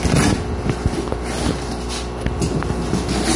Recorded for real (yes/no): yes